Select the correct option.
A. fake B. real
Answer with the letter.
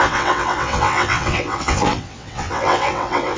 A